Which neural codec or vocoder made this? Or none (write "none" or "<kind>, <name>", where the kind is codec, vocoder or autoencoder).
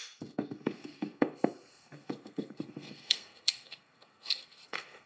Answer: codec, SNAC